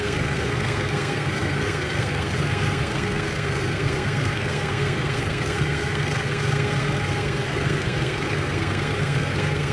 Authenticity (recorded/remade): remade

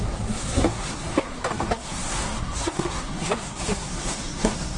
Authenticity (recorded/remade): remade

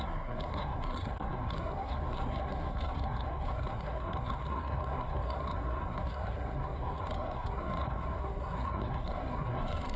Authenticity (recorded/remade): remade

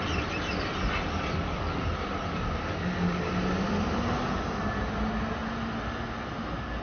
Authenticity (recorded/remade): recorded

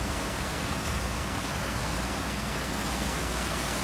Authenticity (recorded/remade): remade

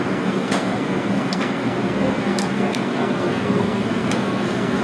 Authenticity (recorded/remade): remade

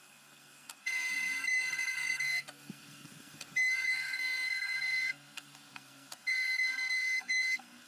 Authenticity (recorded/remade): remade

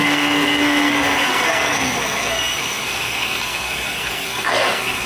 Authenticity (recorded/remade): remade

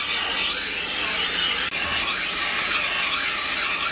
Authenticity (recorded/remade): recorded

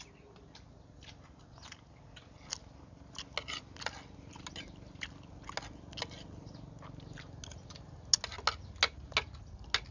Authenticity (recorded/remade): recorded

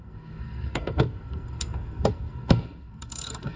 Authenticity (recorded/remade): remade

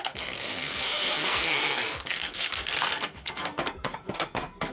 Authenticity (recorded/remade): remade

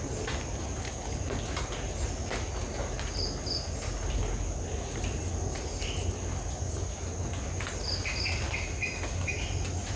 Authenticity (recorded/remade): recorded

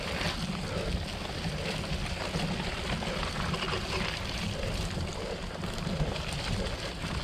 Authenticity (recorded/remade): recorded